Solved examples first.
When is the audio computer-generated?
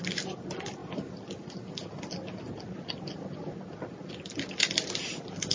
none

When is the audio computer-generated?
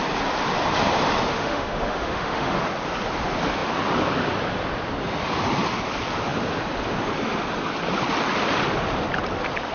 1.3-2.5 (autoencoder, DAC-VAE)